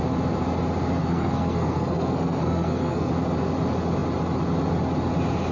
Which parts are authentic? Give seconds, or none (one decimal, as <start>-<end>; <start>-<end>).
0.0-1.0; 3.1-5.5